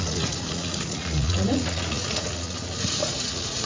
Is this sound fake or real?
fake